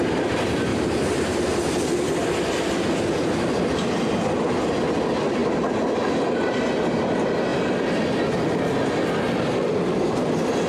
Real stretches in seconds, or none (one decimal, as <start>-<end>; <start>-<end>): 0.0-0.7; 1.8-10.7